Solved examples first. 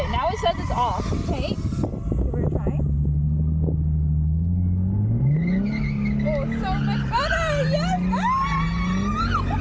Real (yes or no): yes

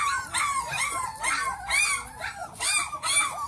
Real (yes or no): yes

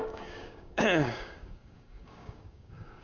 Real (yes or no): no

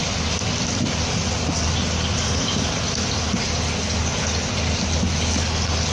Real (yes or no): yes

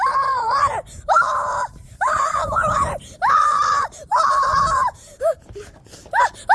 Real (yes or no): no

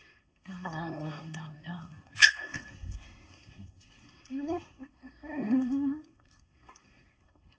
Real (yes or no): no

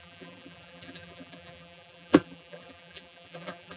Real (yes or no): no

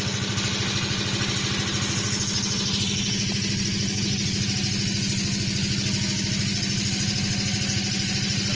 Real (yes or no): yes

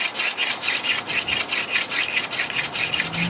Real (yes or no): yes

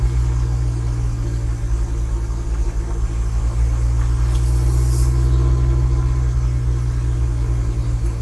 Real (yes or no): yes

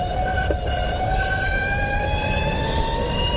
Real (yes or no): yes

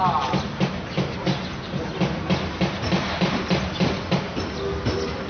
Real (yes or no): yes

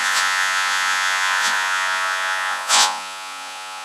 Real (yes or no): no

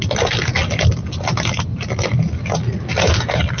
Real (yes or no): yes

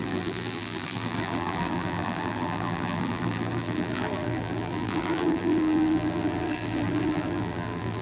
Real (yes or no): no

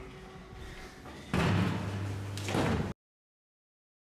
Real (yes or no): yes